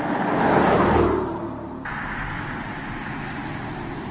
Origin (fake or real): real